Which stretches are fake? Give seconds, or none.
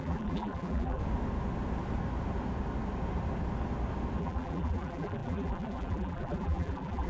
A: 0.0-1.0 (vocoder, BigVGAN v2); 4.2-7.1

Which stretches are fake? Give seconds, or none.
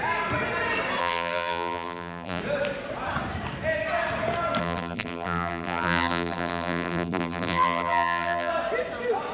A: 1.0-2.4 (vocoder, BigVGAN v2); 4.6-8.5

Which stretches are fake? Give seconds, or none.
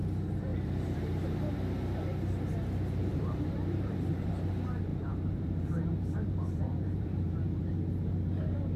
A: 0.5-1.5 (vocoder, BigVGAN v2); 3.1-4.3; 4.9-7.6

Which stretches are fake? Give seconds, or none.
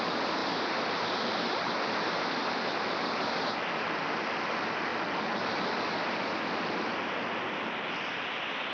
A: none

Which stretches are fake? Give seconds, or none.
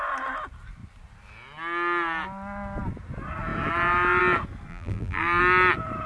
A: 4.7-5.4 (vocoder, BigVGAN v2)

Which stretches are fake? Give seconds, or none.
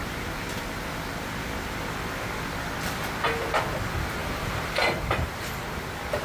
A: 0.0-0.8 (vocoder, BigVGAN v2); 4.2-5.8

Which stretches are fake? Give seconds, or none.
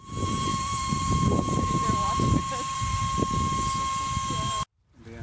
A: 0.5-3.0 (vocoder, BigVGAN v2)